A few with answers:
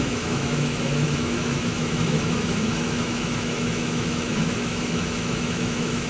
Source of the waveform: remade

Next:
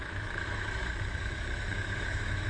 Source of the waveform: remade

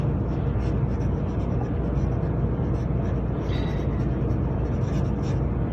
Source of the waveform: recorded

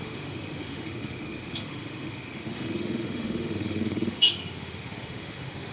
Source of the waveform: remade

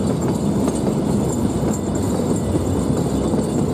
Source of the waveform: recorded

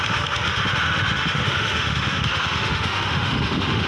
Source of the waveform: remade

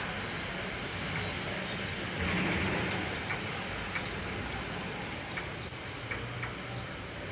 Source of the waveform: recorded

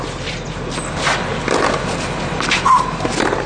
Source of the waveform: recorded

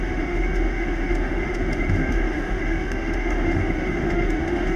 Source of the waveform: remade